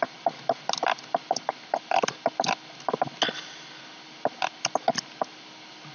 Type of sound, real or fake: real